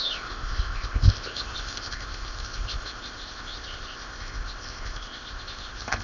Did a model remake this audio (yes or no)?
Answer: yes